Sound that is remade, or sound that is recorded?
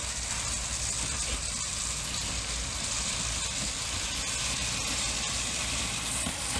recorded